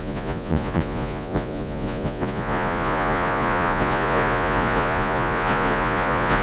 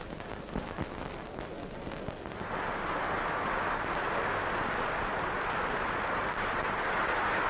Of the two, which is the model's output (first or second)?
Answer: first